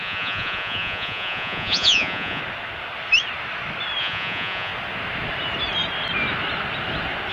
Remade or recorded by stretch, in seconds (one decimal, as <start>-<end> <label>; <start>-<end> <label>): 0.0-2.4 remade; 2.4-4.0 recorded; 4.0-4.7 remade; 4.7-7.3 recorded